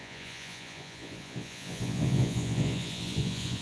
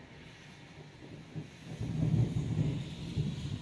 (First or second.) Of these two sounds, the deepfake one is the first